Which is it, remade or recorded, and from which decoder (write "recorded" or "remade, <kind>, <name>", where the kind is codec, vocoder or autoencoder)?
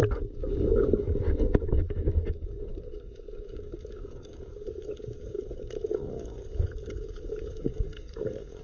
remade, codec, DAC